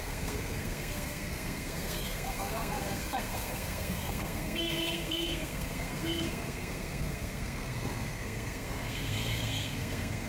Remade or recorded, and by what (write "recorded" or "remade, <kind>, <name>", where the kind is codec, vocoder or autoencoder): remade, codec, SNAC